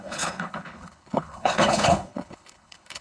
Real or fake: fake